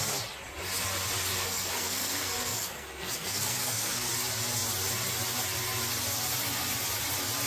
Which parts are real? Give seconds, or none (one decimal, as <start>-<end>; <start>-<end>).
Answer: 0.0-1.3; 4.1-7.5